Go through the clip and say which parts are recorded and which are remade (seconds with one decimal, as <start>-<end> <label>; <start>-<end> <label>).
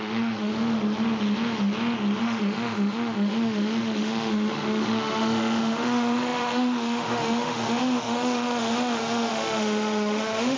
0.0-0.5 remade; 0.5-2.2 recorded; 2.2-10.6 remade